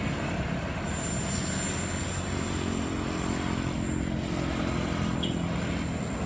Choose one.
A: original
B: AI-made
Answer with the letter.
A